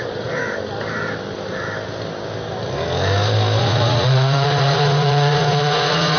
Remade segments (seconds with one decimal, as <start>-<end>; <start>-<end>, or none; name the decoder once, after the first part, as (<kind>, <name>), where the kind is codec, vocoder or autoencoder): 0.0-0.4 (vocoder, Vocos); 3.6-6.2